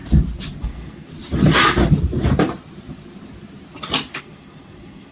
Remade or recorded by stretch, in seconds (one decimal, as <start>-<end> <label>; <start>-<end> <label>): 0.0-0.6 recorded; 0.6-1.1 remade; 1.1-4.2 recorded; 4.2-5.1 remade